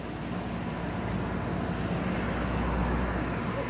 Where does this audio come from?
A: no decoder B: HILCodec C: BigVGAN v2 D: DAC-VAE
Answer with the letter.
A